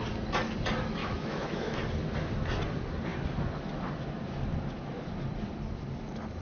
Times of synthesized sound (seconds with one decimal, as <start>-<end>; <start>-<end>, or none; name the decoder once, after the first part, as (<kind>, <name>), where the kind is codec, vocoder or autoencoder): 1.0-1.8 (autoencoder, DAC-VAE)